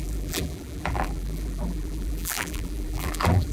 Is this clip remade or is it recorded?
remade